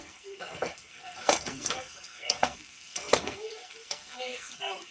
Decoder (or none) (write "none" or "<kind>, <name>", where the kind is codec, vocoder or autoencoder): codec, SNAC